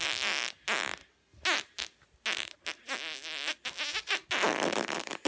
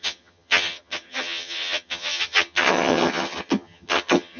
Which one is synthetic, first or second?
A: second